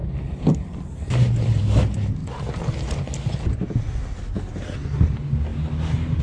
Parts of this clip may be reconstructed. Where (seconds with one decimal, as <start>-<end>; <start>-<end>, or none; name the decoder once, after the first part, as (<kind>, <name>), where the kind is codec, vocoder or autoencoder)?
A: none